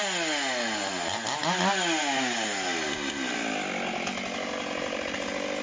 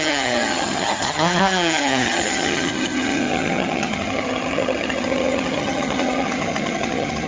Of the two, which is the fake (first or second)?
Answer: second